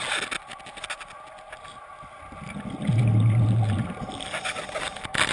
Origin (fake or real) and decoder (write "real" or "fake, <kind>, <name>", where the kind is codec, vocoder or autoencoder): real